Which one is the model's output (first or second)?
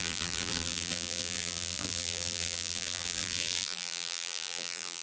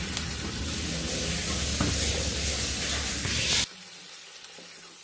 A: first